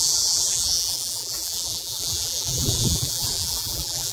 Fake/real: fake